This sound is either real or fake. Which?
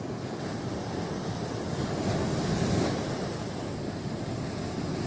real